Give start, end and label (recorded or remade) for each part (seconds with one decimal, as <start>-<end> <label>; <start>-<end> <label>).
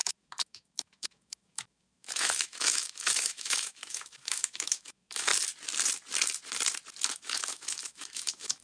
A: 0.0-5.3 remade; 5.3-7.1 recorded; 7.1-8.6 remade